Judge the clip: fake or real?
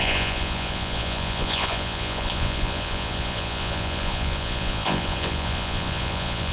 fake